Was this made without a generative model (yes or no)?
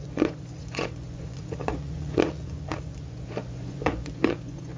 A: no